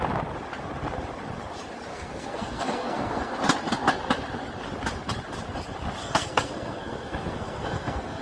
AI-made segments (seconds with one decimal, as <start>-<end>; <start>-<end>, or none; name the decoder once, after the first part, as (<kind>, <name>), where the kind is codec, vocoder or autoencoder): 1.9-3.3 (codec, SNAC); 6.0-8.2